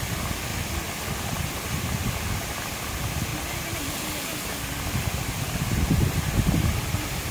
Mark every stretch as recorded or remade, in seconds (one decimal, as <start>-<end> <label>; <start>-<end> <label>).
0.0-0.5 remade; 0.5-1.8 recorded; 1.8-3.3 remade; 3.3-4.9 recorded; 4.9-7.3 remade